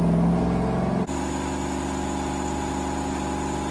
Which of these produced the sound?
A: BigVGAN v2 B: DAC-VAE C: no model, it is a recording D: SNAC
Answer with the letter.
C